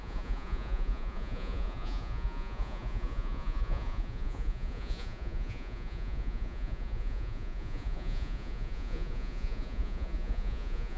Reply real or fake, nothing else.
fake